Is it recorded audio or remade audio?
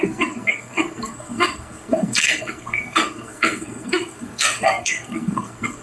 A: remade